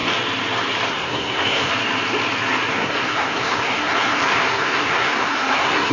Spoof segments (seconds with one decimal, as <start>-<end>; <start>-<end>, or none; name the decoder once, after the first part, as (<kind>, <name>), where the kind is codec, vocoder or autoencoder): 0.9-1.7 (codec, SNAC); 2.7-5.9